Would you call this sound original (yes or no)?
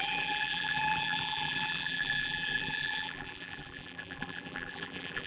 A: no